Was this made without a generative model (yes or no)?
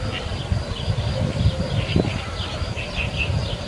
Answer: yes